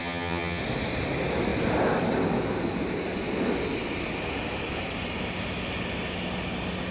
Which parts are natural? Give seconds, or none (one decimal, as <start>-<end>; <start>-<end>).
0.6-6.9